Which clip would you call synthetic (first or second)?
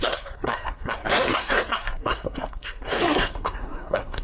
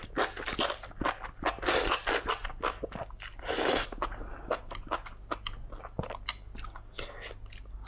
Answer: first